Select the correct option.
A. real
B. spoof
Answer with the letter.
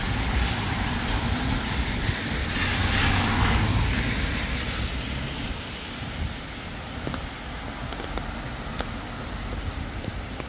A